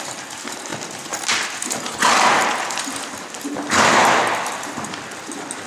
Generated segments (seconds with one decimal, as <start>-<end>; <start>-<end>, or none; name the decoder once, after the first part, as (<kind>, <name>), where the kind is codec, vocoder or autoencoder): none